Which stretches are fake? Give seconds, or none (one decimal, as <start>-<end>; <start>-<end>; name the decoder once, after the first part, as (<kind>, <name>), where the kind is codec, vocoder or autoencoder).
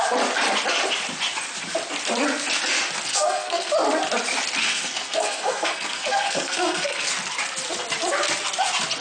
3.1-3.7 (codec, SNAC); 4.6-7.1